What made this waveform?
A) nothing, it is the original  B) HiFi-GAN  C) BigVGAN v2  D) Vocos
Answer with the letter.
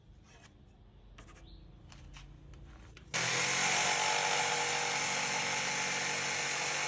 A